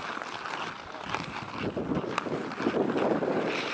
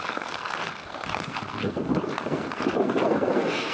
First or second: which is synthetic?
second